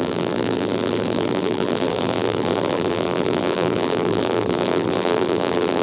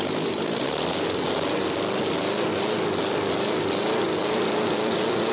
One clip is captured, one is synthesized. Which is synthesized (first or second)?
first